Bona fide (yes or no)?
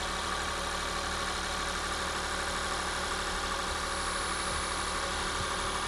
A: yes